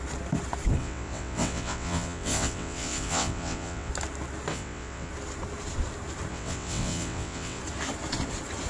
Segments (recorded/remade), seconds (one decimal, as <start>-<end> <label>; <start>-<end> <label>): 0.0-0.8 recorded; 0.8-3.9 remade; 3.9-4.5 recorded; 4.5-5.1 remade; 5.1-6.3 recorded; 6.3-7.6 remade; 7.6-8.7 recorded